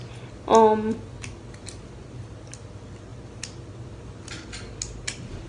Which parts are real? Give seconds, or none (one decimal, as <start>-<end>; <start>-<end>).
0.0-5.5